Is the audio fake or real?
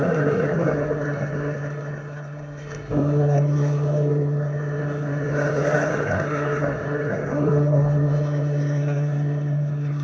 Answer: fake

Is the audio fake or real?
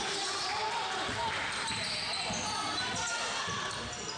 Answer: real